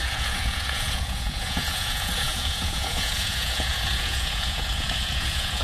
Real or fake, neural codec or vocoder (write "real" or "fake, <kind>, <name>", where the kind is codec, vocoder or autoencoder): fake, vocoder, Vocos